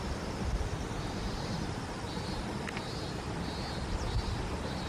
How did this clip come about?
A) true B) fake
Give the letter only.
A